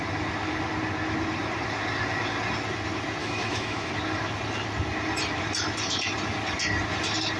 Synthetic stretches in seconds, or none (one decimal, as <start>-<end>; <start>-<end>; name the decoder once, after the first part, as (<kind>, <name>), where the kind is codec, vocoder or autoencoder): 3.2-3.9 (autoencoder, DAC-VAE)